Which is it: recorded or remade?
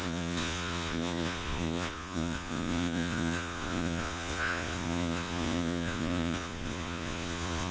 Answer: remade